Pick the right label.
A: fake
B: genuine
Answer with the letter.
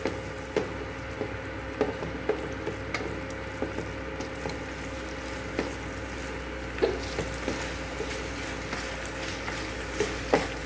B